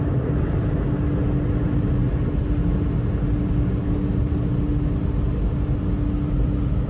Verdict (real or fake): real